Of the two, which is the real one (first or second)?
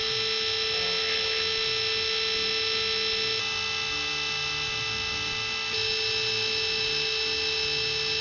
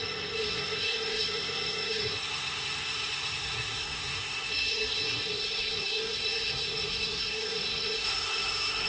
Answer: first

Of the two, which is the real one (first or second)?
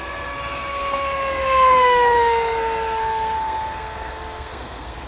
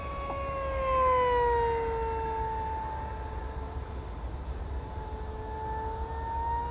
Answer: second